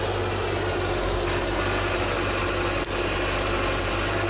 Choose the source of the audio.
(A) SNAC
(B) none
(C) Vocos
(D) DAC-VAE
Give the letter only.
B